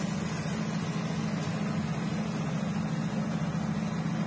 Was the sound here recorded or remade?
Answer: recorded